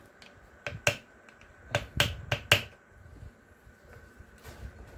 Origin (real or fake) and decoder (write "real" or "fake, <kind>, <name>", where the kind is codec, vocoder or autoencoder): real